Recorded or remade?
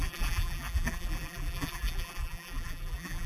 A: remade